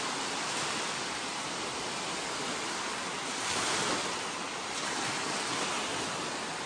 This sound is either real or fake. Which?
real